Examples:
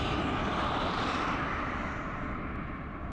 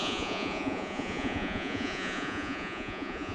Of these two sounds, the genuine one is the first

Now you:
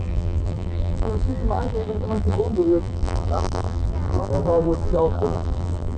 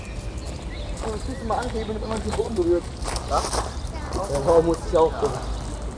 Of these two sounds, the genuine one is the second